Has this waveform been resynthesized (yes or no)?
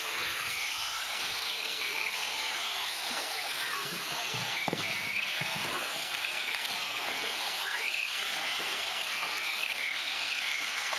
yes